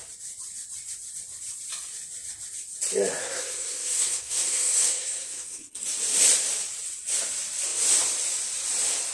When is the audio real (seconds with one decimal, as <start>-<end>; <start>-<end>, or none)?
0.0-3.2; 5.7-9.1